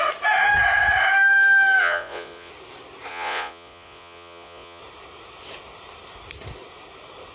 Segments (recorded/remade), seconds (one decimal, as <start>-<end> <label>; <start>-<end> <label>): 0.0-1.8 recorded; 1.8-2.5 remade; 2.5-3.1 recorded; 3.1-4.8 remade; 4.8-7.3 recorded